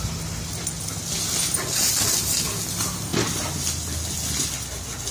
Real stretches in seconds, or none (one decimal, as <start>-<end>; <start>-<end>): 0.0-5.1